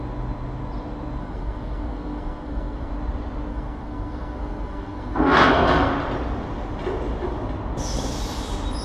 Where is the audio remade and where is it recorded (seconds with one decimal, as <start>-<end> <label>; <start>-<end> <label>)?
0.0-1.2 recorded; 1.2-2.9 remade; 2.9-3.5 recorded; 3.5-5.9 remade; 5.9-8.8 recorded